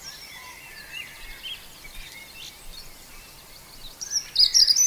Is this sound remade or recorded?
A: recorded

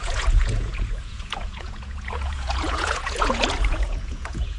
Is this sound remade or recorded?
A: remade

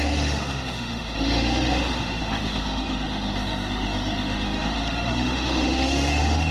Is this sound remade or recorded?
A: remade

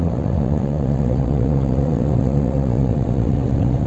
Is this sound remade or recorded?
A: remade